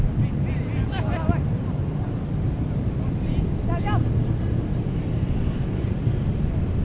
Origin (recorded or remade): recorded